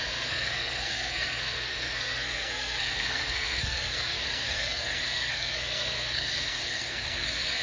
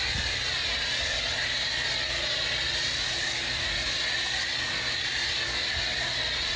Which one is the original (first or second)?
second